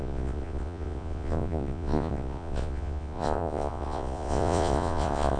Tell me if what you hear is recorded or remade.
remade